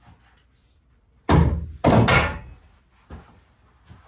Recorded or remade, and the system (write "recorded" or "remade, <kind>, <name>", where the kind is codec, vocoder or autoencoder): recorded